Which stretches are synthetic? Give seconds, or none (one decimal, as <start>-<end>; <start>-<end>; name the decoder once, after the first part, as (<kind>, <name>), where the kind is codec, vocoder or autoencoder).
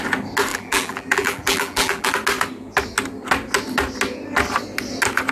0.5-2.1 (vocoder, BigVGAN v2)